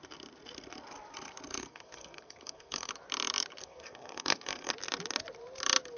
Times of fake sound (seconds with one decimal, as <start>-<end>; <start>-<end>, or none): 1.6-2.9; 3.6-4.7

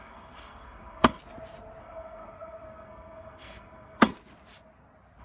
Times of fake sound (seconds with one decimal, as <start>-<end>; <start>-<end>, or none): 0.0-1.2; 1.8-4.1

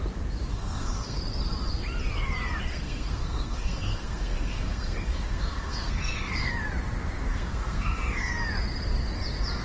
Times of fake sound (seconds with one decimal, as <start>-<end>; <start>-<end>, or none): 0.5-1.2; 2.7-6.5; 7.3-8.3

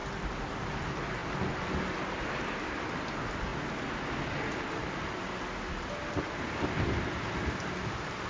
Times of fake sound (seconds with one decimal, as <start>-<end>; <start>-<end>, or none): none

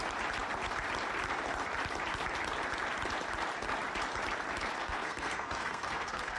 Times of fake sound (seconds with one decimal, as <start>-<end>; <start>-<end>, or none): 4.8-6.4

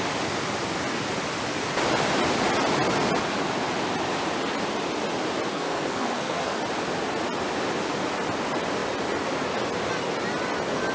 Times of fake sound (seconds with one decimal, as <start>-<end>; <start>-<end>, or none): 5.5-6.6

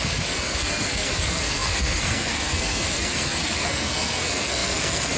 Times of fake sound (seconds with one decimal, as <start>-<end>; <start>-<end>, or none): 0.0-5.2